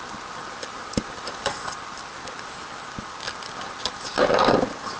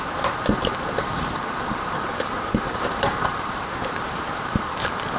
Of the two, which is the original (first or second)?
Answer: first